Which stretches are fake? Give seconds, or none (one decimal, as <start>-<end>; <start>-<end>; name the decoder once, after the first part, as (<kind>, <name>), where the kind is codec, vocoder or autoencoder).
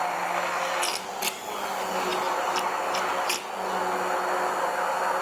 none